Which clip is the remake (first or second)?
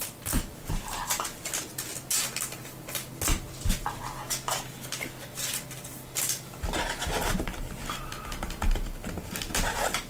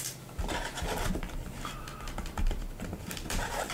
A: second